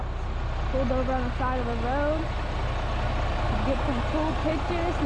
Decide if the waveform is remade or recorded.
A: recorded